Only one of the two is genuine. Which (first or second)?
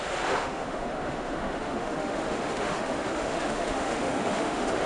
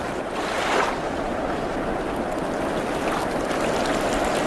second